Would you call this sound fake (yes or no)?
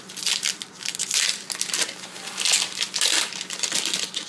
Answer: no